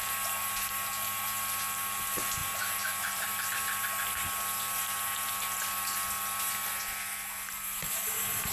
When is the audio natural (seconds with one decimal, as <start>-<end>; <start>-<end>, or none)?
0.0-2.4; 3.5-8.5